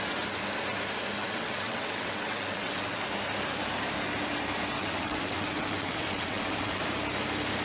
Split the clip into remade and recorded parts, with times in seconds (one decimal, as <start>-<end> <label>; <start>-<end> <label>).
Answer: 0.0-1.2 recorded; 1.2-3.0 remade; 3.0-4.8 recorded; 4.8-6.8 remade; 6.8-7.6 recorded

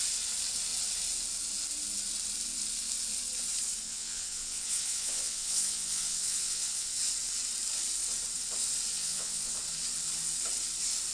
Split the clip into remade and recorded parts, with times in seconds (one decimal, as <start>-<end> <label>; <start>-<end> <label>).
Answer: 0.0-3.8 recorded; 3.8-7.0 remade; 7.0-8.9 recorded; 8.9-9.5 remade; 9.5-11.1 recorded

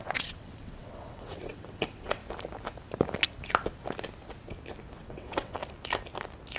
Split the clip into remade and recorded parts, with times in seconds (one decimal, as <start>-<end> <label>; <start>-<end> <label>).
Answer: 0.0-2.2 remade; 2.2-5.0 recorded; 5.0-5.6 remade; 5.6-6.6 recorded

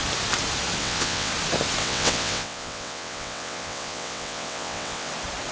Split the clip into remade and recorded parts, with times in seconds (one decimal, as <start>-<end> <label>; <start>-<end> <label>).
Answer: 0.0-0.8 recorded; 0.8-1.3 remade; 1.3-1.8 recorded; 1.8-5.1 remade; 5.1-5.5 recorded

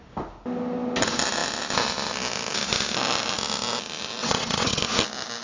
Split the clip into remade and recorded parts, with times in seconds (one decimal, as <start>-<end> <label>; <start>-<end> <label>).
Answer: 0.0-4.2 recorded; 4.2-4.8 remade; 4.8-5.4 recorded

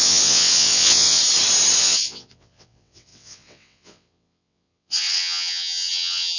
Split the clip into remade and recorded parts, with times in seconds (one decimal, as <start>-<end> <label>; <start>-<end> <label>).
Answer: 0.0-1.2 remade; 1.2-1.8 recorded; 1.8-6.4 remade

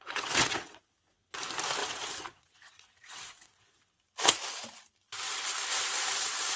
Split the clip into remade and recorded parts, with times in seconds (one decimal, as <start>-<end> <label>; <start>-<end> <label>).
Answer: 0.0-0.8 remade; 0.8-1.8 recorded; 1.8-3.9 remade; 3.9-6.6 recorded